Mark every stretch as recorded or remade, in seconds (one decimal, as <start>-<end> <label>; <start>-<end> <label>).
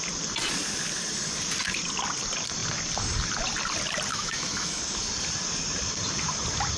0.0-4.1 recorded; 4.1-4.8 remade; 4.8-6.8 recorded